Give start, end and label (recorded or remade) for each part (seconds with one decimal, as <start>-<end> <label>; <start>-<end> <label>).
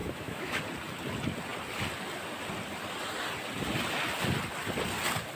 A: 0.0-0.6 remade; 0.6-5.4 recorded